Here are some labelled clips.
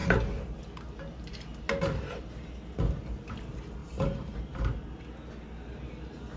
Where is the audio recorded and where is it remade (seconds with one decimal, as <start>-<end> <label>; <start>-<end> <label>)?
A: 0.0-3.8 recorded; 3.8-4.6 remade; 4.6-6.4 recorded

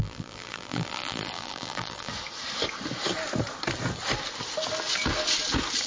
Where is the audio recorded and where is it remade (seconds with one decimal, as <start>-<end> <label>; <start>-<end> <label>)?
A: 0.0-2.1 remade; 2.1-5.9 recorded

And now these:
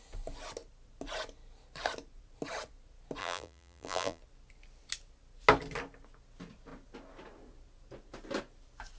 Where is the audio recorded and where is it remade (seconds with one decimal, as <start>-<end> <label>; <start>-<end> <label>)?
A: 0.0-3.2 recorded; 3.2-4.2 remade; 4.2-9.0 recorded